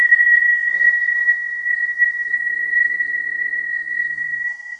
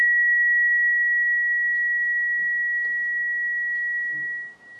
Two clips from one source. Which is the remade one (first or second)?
first